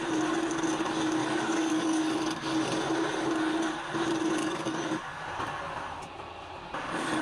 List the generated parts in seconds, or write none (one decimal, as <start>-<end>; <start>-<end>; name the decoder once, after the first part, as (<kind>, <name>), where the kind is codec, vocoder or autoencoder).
1.2-2.1 (codec, DAC); 4.4-5.2